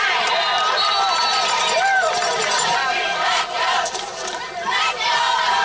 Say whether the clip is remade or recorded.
remade